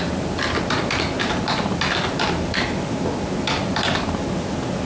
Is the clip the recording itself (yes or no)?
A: yes